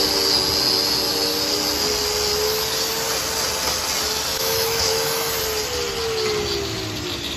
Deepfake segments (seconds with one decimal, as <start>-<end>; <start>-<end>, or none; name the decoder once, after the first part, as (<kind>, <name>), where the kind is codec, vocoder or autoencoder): 4.3-5.3 (autoencoder, DAC-VAE)